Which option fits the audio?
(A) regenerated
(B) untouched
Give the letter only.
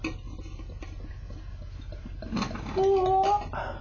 B